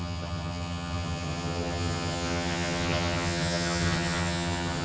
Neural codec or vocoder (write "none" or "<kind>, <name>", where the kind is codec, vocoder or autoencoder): vocoder, HiFi-GAN